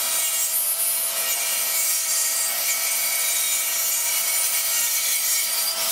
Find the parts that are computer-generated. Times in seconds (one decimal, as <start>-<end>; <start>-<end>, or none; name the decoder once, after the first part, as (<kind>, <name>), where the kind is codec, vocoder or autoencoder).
2.1-3.3 (vocoder, BigVGAN v2); 4.1-5.9